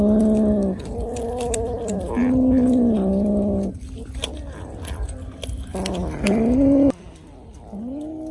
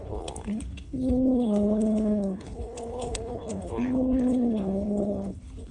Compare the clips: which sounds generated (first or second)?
second